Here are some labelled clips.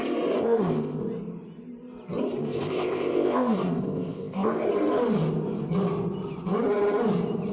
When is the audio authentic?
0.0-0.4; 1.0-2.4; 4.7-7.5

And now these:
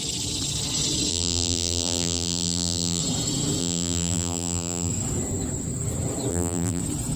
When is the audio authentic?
0.0-1.1; 3.0-3.6; 4.9-6.3; 6.8-7.2

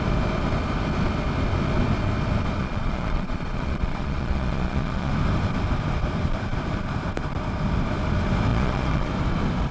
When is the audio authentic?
0.0-2.6; 5.1-8.5; 9.1-9.7

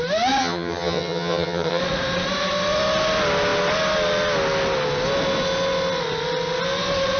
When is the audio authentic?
0.0-0.4; 1.8-7.2

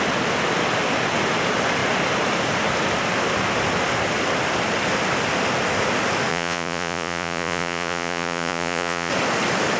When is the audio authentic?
0.0-6.3; 9.1-9.8

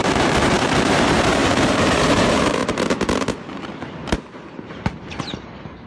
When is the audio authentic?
2.6-4.7